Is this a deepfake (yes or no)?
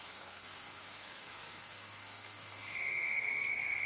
yes